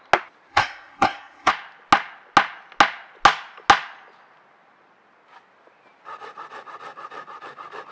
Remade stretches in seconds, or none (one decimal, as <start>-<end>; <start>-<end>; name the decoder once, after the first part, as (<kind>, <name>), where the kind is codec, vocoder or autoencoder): 0.5-1.5 (codec, SNAC)